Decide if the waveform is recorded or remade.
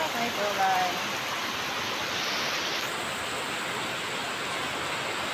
recorded